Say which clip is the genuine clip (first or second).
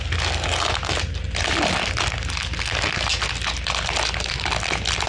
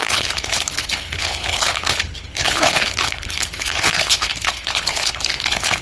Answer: first